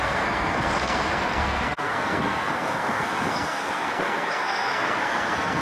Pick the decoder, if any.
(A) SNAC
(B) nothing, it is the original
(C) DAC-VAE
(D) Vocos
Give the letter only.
A